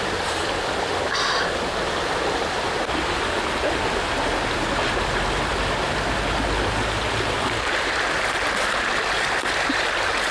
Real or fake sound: real